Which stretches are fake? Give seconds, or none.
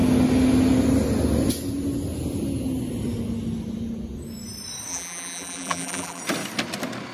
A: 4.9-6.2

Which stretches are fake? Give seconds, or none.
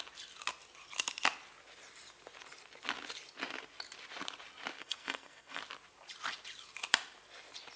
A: 4.8-5.6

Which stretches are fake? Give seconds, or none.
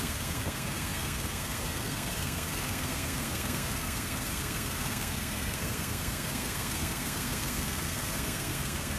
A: 0.0-9.0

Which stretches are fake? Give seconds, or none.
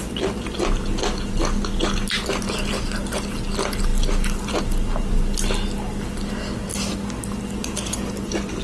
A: none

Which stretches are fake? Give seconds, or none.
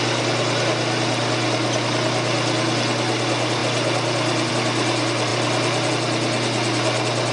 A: none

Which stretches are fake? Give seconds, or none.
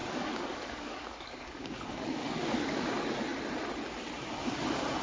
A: 0.0-2.9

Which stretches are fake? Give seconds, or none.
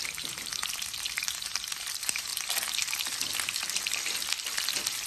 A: 0.0-0.5; 1.2-2.3